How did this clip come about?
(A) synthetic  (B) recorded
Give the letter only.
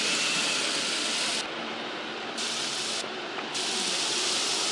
A